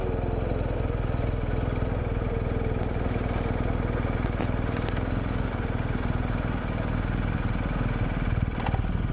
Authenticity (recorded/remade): recorded